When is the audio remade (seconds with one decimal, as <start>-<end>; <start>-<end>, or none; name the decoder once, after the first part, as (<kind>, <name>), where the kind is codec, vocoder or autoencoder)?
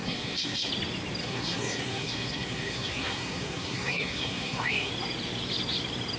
0.0-0.7 (codec, SNAC); 1.2-4.9